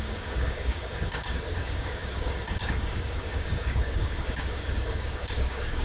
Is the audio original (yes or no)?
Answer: no